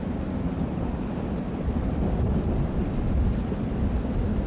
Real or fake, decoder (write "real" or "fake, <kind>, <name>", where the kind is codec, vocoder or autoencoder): real